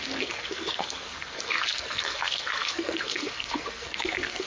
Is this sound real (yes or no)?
no